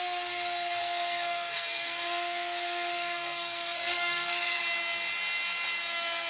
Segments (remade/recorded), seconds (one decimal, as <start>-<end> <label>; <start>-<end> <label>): 0.0-0.8 recorded; 0.8-4.6 remade; 4.6-6.3 recorded